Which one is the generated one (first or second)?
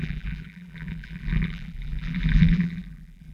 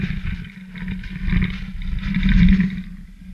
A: first